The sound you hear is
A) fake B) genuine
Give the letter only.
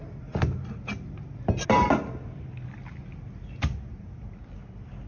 B